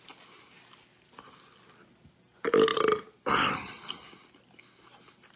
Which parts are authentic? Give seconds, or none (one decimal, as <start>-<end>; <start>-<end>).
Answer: 0.0-5.4